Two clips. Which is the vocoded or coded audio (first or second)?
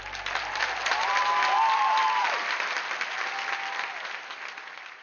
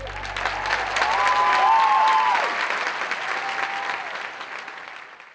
first